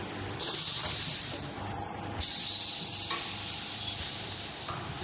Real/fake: fake